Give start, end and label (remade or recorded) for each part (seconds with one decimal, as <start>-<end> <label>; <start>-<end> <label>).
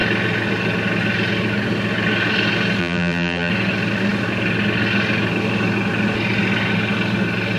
0.0-2.8 recorded; 2.8-3.5 remade; 3.5-7.6 recorded